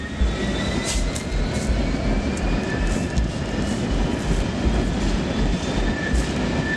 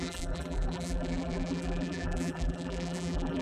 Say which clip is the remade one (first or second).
second